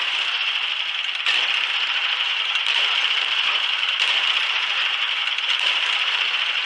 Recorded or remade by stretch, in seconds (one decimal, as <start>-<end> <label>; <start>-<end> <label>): 0.0-2.3 recorded; 2.3-6.3 remade; 6.3-6.7 recorded